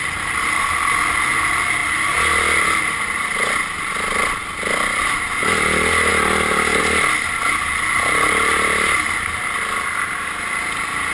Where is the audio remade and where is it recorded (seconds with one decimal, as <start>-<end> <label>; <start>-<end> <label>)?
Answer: 0.0-11.1 recorded